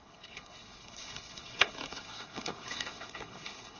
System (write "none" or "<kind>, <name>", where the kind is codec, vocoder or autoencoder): codec, HILCodec